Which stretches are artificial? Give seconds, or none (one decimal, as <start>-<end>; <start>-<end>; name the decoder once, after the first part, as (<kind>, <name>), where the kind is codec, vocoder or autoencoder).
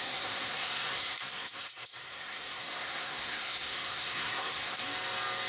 0.0-4.8 (codec, SNAC)